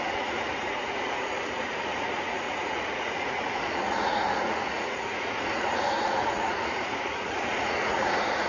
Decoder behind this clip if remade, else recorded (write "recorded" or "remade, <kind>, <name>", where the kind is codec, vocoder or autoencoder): remade, vocoder, Vocos